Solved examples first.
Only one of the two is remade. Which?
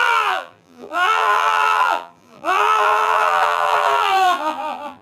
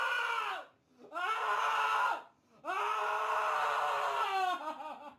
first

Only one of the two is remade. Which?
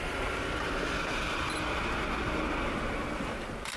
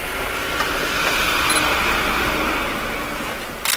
first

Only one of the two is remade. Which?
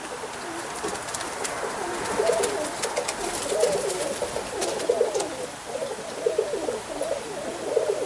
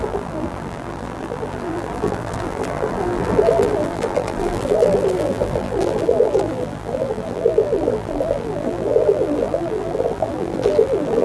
second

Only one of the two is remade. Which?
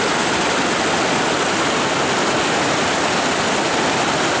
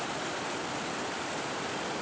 second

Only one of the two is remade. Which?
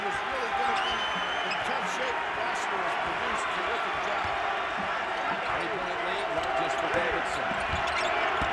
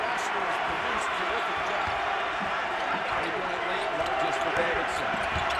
second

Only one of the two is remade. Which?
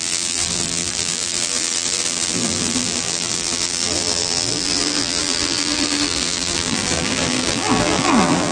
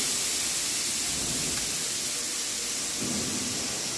first